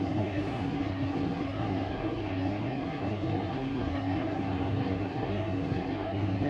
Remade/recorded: remade